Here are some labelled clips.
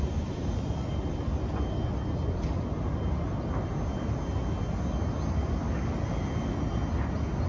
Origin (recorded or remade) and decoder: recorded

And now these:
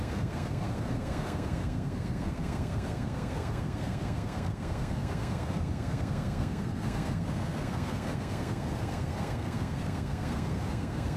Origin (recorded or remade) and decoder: remade, codec, SNAC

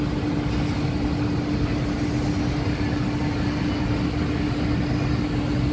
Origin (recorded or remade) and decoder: recorded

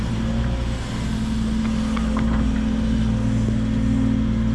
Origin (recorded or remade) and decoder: recorded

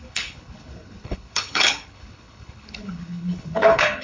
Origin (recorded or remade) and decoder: remade, codec, HILCodec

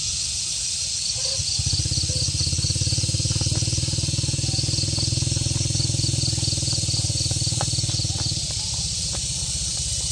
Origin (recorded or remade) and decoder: recorded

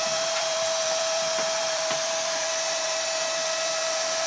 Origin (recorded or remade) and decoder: remade, vocoder, BigVGAN v2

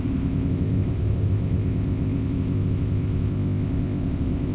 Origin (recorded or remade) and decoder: remade, codec, ZipCodec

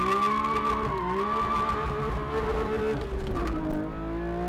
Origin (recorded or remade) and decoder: recorded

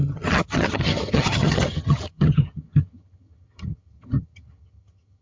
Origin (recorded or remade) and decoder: remade, vocoder, HiFi-GAN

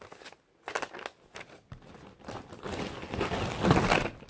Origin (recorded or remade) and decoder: recorded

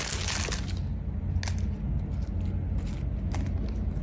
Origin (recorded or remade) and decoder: recorded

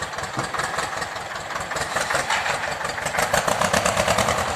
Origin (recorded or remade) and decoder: remade, vocoder, BigVGAN v2